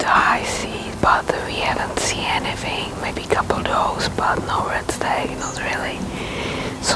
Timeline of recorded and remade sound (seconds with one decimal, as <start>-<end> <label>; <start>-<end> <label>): 0.0-7.0 recorded